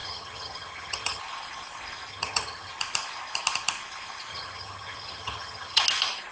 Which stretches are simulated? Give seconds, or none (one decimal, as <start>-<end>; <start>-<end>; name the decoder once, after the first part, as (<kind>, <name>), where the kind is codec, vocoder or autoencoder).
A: 0.0-1.2 (vocoder, HiFi-GAN); 2.1-2.7; 4.3-5.8